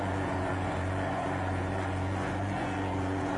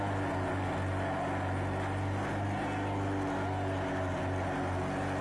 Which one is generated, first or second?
first